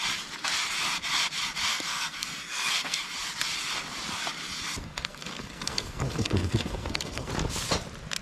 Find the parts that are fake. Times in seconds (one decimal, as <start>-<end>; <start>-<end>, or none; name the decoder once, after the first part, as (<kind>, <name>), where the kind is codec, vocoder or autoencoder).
1.7-3.0 (codec, SNAC); 4.8-7.3